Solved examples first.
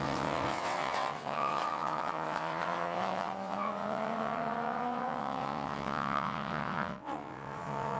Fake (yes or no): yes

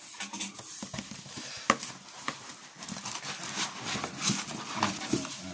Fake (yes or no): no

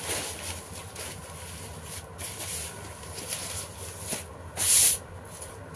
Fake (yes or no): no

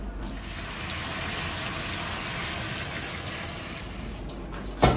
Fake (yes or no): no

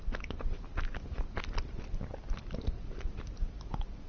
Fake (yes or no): no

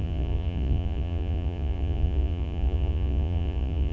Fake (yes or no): yes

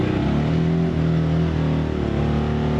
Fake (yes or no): no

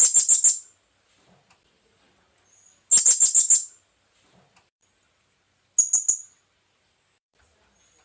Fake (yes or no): no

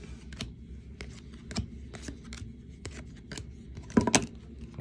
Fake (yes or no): no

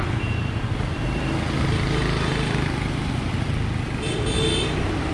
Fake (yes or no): no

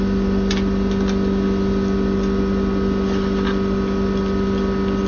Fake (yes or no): no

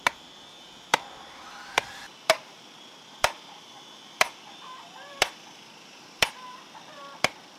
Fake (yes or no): yes